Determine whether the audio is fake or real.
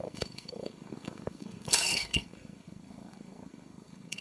fake